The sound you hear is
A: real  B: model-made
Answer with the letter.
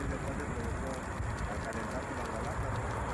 A